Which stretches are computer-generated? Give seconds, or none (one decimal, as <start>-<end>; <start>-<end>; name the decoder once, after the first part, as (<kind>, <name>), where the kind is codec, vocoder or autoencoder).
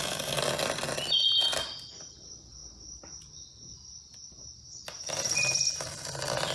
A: none